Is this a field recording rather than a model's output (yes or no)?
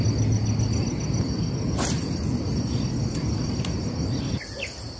yes